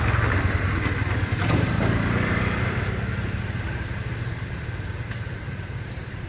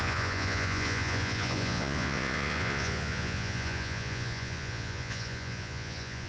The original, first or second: first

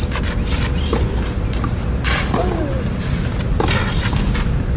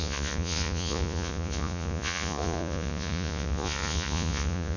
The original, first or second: first